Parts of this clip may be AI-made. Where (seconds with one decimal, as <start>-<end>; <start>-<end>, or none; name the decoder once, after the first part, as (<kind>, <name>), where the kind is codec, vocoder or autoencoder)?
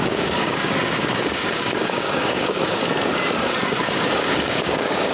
0.0-2.8 (codec, DAC); 3.9-5.1